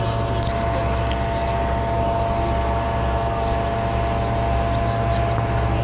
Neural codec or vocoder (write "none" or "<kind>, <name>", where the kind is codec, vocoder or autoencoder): none